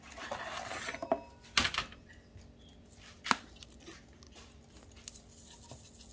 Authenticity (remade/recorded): recorded